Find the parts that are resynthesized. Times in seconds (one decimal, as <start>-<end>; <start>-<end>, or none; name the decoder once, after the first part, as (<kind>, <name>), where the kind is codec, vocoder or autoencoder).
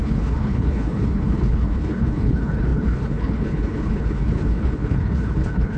0.0-5.8 (codec, HILCodec)